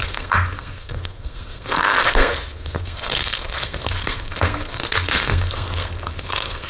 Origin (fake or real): fake